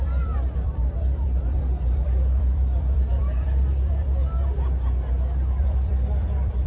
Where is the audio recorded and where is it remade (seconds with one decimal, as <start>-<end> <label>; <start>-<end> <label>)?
0.0-4.2 remade; 4.2-5.6 recorded; 5.6-6.7 remade